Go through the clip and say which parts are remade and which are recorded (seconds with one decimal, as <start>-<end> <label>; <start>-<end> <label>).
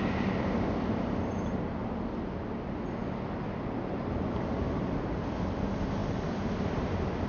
0.0-7.3 recorded